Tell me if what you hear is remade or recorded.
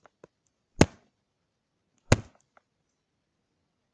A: recorded